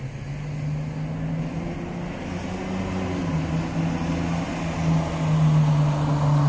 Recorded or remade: recorded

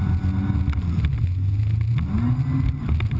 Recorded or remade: recorded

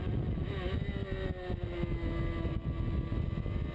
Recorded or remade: recorded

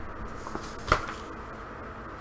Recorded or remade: recorded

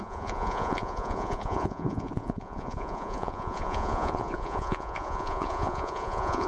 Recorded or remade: remade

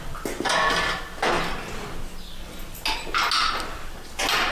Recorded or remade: recorded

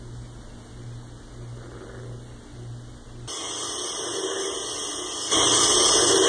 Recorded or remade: recorded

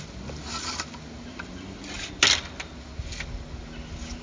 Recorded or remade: recorded